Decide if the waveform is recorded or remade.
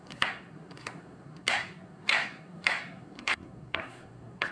remade